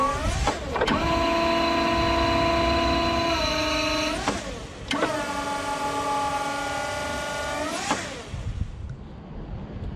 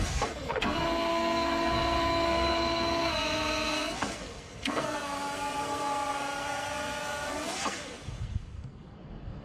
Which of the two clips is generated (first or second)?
second